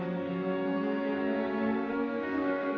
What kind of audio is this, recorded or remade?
remade